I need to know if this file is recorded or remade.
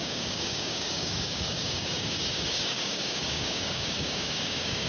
remade